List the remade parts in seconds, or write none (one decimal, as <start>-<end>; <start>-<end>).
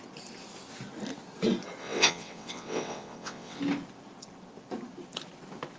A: 1.8-3.6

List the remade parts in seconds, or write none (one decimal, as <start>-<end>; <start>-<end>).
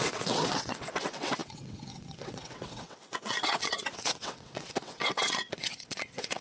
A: 0.0-6.4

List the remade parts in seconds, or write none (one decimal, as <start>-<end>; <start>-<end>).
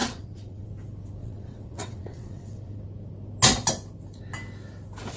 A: 0.0-0.7; 1.2-2.8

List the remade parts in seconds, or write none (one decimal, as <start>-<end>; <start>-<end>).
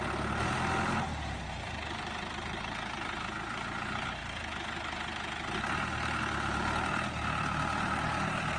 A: none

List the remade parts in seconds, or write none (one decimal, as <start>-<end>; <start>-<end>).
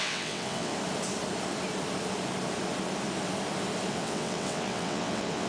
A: 0.0-0.7; 3.9-5.5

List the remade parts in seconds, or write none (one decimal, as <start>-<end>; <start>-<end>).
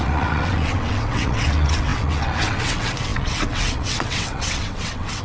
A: 0.0-5.2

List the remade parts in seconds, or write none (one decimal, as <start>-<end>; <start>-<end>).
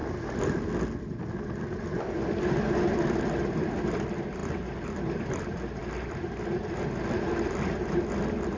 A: none